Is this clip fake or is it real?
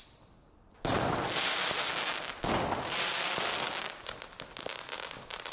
real